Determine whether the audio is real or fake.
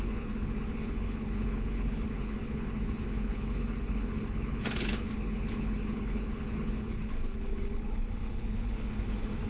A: fake